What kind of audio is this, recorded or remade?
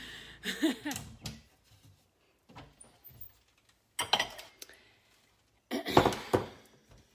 recorded